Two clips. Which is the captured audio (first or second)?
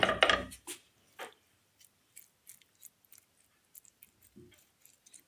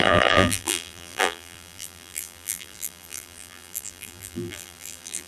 first